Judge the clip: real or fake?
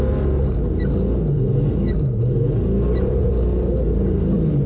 real